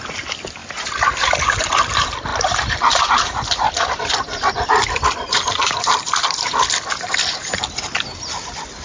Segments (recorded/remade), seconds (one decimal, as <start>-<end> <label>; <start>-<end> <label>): 0.0-2.3 recorded; 2.3-7.1 remade; 7.1-8.8 recorded